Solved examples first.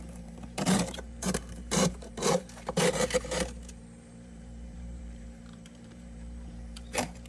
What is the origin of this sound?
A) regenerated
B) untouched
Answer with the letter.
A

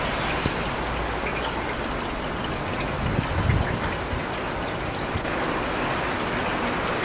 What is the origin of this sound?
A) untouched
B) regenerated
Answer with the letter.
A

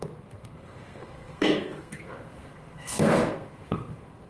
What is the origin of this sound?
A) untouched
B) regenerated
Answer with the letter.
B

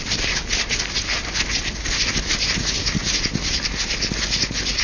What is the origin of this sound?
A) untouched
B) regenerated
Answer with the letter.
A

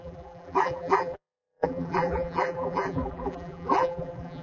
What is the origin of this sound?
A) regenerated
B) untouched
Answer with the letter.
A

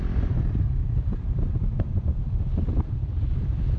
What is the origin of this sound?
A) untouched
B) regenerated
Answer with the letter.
B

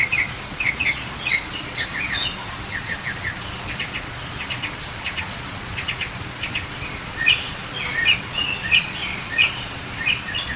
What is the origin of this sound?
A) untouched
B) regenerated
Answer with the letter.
B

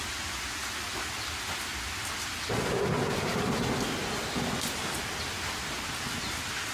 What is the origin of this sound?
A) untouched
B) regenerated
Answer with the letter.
A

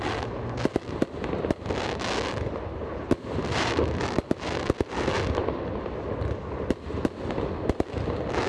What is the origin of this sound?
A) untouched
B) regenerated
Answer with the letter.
A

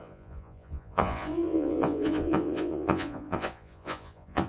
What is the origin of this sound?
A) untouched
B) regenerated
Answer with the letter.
B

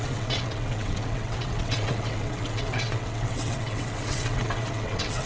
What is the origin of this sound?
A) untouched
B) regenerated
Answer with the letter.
B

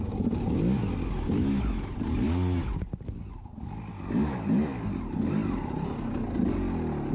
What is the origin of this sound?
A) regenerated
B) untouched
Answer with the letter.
B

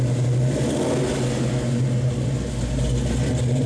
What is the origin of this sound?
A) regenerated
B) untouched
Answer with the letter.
B